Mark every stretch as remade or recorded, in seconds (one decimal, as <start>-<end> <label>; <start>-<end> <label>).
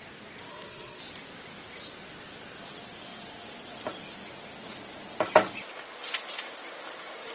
0.0-0.5 recorded; 0.5-1.0 remade; 1.0-7.3 recorded